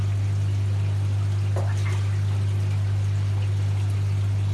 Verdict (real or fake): real